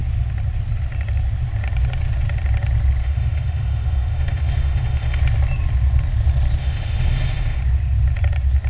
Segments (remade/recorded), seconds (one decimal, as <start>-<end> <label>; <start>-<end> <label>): 0.0-3.0 recorded; 3.0-5.2 remade; 5.2-6.6 recorded; 6.6-7.6 remade; 7.6-8.7 recorded